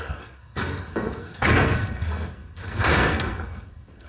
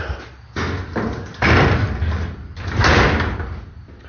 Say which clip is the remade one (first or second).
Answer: first